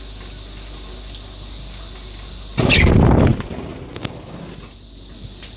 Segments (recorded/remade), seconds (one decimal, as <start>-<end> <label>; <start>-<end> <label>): 0.0-5.6 recorded